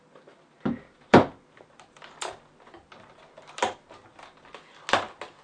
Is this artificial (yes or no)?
no